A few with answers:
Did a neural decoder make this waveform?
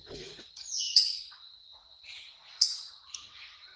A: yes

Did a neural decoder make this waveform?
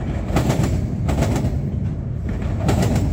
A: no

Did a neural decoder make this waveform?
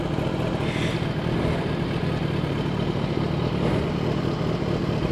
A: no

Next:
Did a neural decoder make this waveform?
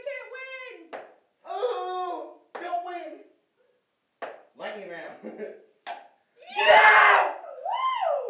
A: no